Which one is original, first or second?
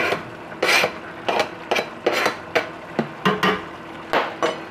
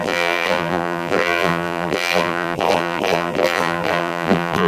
first